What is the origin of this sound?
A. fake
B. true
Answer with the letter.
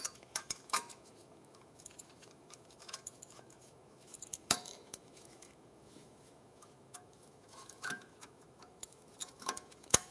A